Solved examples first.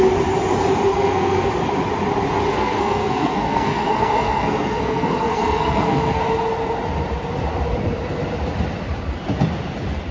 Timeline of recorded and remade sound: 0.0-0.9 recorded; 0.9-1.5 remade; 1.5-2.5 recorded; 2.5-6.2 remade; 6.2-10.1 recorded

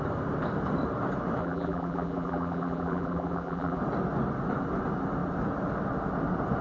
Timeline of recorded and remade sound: 0.0-1.4 recorded; 1.4-3.8 remade; 3.8-6.6 recorded

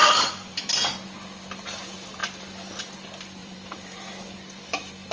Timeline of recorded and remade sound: 0.0-0.6 remade; 0.6-3.4 recorded; 3.4-4.0 remade; 4.0-5.1 recorded